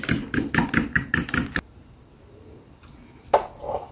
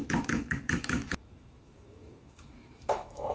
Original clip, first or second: first